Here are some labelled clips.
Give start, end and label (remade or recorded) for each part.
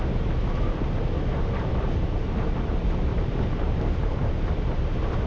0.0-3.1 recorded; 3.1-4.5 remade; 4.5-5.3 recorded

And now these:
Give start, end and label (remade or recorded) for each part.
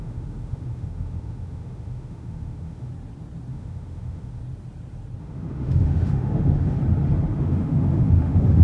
0.0-2.9 remade; 2.9-3.5 recorded; 3.5-4.4 remade; 4.4-5.2 recorded; 5.2-6.8 remade; 6.8-7.4 recorded; 7.4-8.6 remade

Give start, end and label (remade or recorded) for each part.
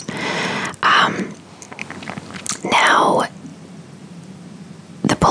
0.0-3.5 recorded; 3.5-5.3 remade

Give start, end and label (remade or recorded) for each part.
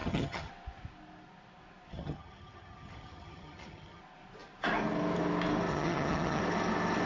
0.0-0.5 remade; 0.5-1.9 recorded; 1.9-4.0 remade; 4.0-5.7 recorded; 5.7-6.4 remade; 6.4-7.1 recorded